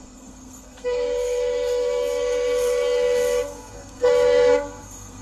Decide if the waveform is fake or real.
fake